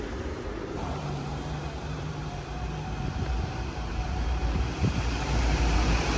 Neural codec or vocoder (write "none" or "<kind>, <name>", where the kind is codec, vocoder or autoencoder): vocoder, BigVGAN v2